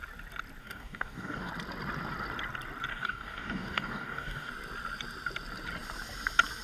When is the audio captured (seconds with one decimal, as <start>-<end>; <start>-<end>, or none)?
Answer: 0.0-0.6; 1.5-2.9; 4.5-6.6